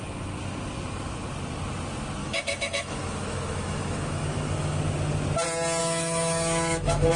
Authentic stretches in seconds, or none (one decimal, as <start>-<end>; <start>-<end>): 0.0-2.2; 4.8-5.8